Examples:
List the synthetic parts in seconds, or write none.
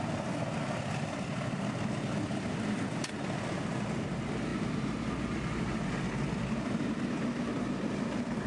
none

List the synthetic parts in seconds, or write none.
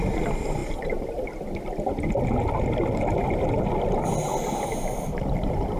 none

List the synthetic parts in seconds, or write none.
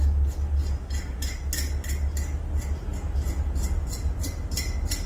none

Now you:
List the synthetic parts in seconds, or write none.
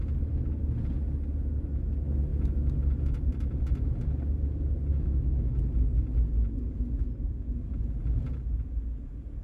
4.9-5.5 (autoencoder, DAC-VAE)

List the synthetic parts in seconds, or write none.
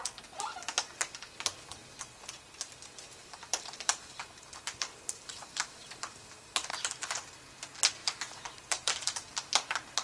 3.2-7.3 (vocoder, BigVGAN v2); 8.0-9.5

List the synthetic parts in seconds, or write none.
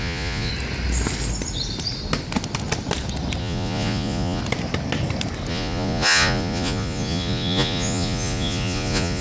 0.0-0.5 (vocoder, Vocos); 3.4-4.4; 5.5-9.2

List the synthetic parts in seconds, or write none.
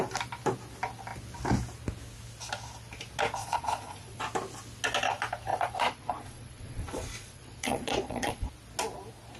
3.4-4.2 (vocoder, Vocos); 5.5-8.5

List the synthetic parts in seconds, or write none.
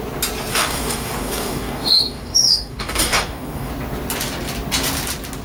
0.5-3.7 (codec, DAC)